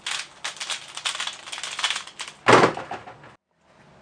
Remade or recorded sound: recorded